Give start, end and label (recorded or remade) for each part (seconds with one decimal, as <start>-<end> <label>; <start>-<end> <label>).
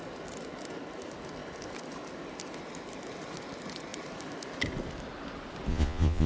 0.0-5.7 recorded; 5.7-6.3 remade